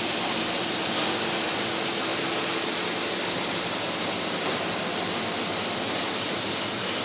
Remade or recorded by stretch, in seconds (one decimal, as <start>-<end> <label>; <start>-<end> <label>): 0.0-7.0 recorded